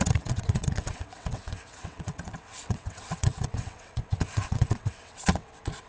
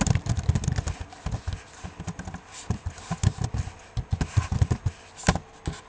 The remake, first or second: first